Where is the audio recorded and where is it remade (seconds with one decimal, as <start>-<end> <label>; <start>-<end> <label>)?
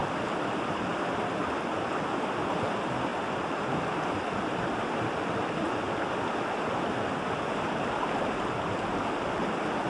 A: 0.0-0.8 remade; 0.8-9.9 recorded